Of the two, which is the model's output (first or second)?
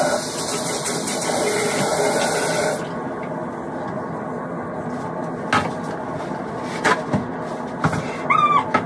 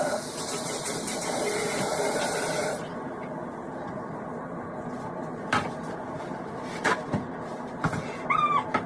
second